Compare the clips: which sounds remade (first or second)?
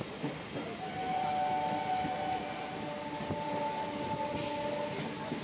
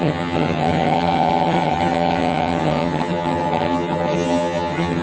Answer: second